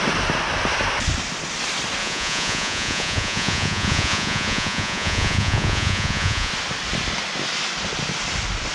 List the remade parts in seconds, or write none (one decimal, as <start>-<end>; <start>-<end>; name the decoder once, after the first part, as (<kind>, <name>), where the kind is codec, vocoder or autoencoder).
2.0-6.5 (vocoder, Vocos)